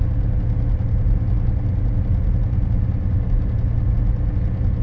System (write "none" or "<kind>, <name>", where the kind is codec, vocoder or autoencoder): none